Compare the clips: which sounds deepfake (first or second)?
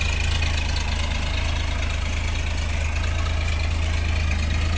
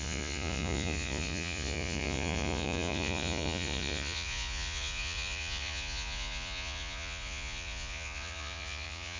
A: second